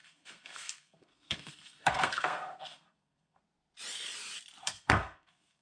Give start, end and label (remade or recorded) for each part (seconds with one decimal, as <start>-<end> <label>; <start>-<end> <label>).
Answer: 0.0-3.4 remade; 3.4-4.6 recorded; 4.6-5.6 remade